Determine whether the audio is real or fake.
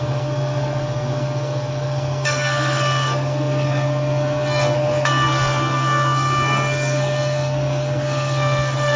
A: fake